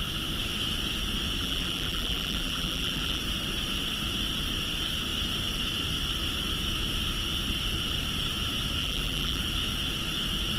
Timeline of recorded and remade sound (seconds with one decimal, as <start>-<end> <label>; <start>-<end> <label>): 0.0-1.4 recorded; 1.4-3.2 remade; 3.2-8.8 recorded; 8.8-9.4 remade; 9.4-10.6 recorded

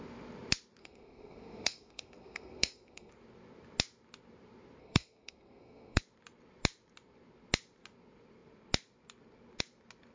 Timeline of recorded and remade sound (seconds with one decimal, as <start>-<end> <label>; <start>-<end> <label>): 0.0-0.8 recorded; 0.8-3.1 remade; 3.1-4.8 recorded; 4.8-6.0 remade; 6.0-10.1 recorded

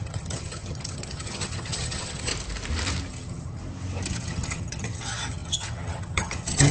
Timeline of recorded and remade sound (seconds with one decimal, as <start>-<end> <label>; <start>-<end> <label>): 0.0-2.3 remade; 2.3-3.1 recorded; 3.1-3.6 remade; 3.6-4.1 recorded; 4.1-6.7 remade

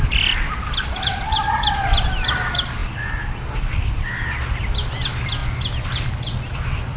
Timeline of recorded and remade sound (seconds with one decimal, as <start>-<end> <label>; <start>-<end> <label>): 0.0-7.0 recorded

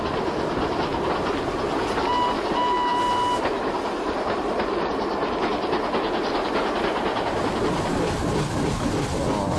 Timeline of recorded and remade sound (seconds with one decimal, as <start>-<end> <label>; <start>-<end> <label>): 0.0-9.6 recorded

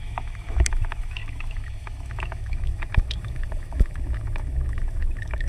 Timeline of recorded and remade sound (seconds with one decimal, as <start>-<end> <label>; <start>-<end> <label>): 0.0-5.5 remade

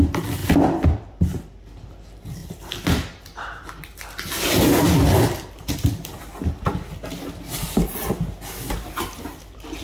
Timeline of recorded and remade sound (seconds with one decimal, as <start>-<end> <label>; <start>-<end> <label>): 0.0-0.4 recorded; 0.4-1.2 remade; 1.2-2.4 recorded; 2.4-6.2 remade; 6.2-9.8 recorded